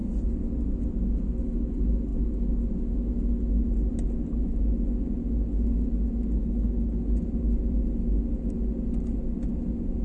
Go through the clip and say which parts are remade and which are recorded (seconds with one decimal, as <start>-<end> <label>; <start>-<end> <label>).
0.0-6.4 recorded; 6.4-7.2 remade; 7.2-10.0 recorded